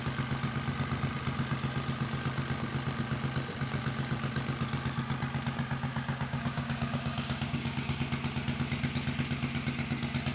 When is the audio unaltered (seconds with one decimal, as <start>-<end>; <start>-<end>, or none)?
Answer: 0.0-5.9; 8.0-10.3